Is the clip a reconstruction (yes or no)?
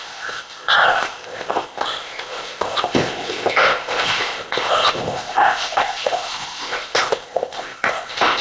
yes